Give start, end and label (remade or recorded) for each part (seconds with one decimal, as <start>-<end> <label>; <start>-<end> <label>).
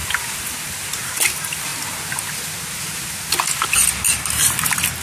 0.0-0.8 recorded; 0.8-1.7 remade; 1.7-3.9 recorded; 3.9-5.0 remade